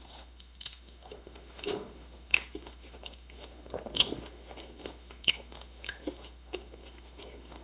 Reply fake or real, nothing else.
fake